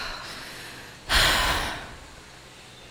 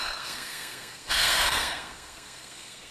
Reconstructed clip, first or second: second